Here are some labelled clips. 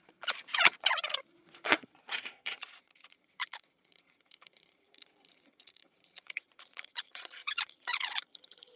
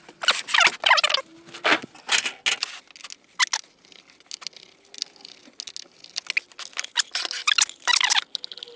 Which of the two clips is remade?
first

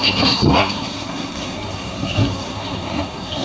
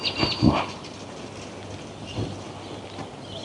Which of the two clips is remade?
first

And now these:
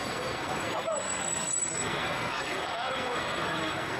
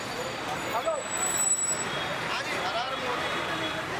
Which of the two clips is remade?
first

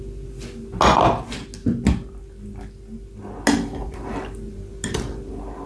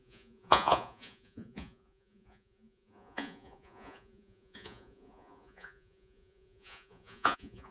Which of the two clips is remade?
second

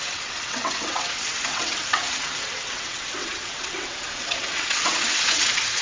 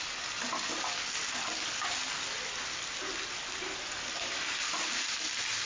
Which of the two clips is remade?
first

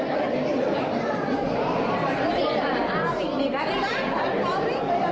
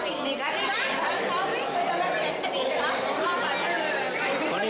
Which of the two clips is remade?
first